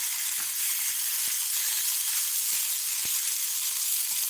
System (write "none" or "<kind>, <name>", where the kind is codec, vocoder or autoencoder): none